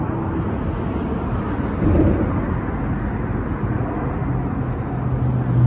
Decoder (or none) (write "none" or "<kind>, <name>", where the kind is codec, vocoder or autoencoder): none